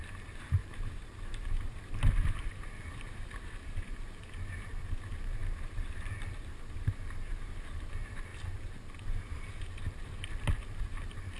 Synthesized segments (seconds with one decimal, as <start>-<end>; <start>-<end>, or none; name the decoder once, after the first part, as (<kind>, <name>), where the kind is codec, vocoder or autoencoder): 0.0-4.7 (vocoder, BigVGAN v2); 5.4-11.4